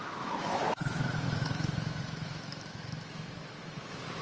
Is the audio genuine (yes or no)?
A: no